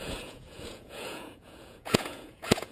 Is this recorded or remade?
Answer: remade